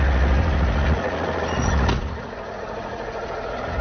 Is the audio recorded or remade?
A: remade